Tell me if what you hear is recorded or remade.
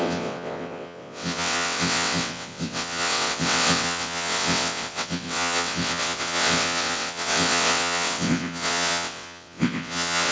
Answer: remade